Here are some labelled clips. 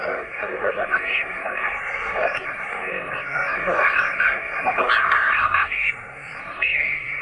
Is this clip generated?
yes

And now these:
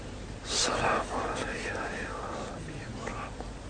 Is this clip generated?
no